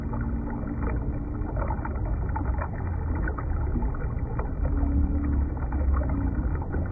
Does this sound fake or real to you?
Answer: real